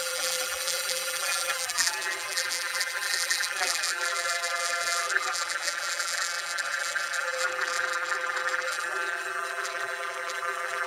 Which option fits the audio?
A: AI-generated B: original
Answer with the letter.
A